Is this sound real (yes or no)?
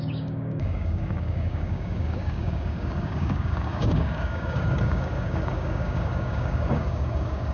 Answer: no